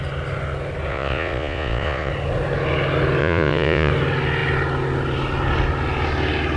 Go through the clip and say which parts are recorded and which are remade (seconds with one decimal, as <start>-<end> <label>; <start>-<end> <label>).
0.0-0.9 recorded; 0.9-2.1 remade; 2.1-3.2 recorded; 3.2-3.9 remade; 3.9-6.6 recorded